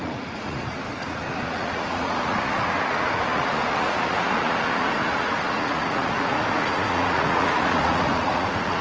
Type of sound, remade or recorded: remade